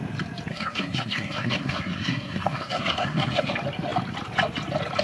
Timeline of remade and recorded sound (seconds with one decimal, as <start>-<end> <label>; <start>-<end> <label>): 0.0-0.5 recorded; 0.5-3.5 remade; 3.5-5.0 recorded